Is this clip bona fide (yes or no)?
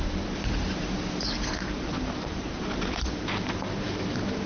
yes